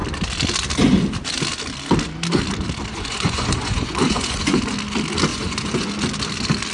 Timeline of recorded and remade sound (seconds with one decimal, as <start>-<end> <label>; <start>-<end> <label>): 0.0-2.9 recorded; 2.9-4.6 remade; 4.6-5.3 recorded; 5.3-5.9 remade; 5.9-6.7 recorded